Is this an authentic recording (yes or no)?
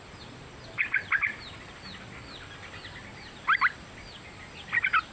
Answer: no